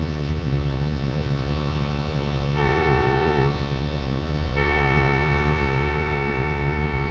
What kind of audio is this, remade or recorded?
remade